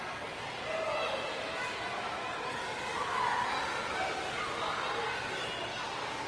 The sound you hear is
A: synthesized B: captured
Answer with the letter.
B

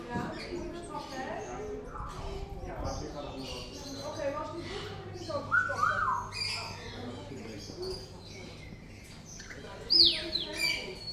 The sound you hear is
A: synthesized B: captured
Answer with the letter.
B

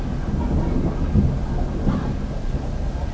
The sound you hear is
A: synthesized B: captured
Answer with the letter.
B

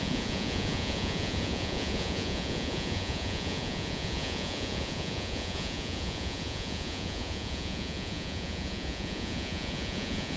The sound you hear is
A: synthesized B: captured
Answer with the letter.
A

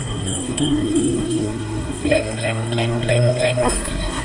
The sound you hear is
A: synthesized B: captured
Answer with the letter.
A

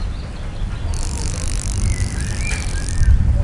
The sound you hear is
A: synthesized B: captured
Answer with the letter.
B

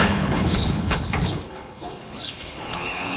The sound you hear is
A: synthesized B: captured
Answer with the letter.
A